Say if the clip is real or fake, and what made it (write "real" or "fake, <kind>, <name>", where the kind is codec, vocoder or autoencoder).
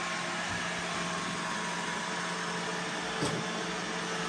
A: real